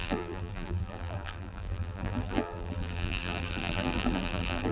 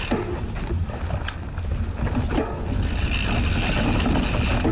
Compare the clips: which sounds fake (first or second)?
first